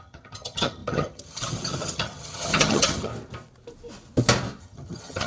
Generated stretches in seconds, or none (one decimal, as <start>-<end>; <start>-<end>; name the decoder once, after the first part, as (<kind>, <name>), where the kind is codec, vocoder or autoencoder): 0.0-3.1 (vocoder, HiFi-GAN); 4.6-5.3